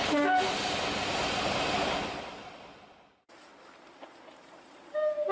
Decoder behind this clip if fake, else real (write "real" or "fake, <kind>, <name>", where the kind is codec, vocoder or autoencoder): real